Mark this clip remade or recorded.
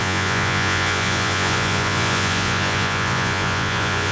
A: remade